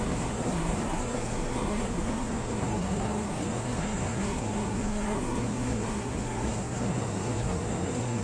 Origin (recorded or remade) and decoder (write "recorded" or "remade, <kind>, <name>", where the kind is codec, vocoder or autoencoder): remade, codec, SNAC